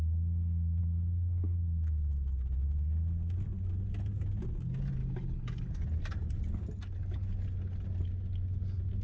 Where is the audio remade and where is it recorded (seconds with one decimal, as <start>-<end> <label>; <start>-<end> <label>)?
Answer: 0.0-5.0 recorded; 5.0-5.7 remade; 5.7-9.0 recorded